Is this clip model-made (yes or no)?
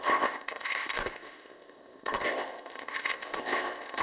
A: yes